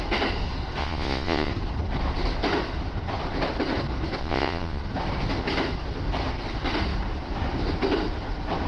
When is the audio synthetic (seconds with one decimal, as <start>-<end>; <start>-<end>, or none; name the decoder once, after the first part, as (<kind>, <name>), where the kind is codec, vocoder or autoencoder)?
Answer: 0.8-1.5 (vocoder, Vocos); 4.2-4.8